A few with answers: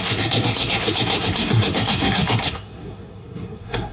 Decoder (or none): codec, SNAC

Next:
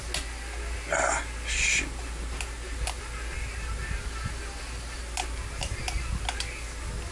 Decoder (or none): none